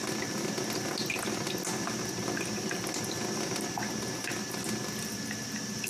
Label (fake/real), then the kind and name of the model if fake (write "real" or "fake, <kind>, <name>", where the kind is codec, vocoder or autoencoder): real